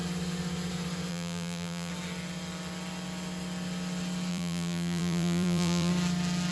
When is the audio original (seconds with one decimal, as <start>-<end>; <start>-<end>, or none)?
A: 0.0-1.1; 1.9-4.3; 5.9-6.5